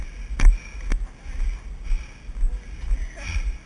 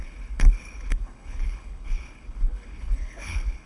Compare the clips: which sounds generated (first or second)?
second